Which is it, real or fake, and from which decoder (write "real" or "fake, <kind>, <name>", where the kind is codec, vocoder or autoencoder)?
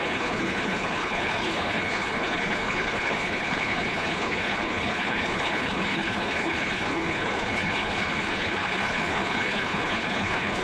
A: fake, codec, HILCodec